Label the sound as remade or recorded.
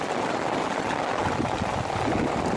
recorded